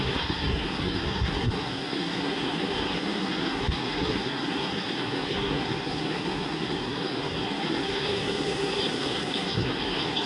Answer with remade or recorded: remade